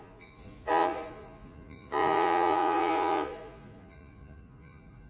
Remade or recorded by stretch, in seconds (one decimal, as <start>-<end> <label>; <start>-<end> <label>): 0.0-5.1 remade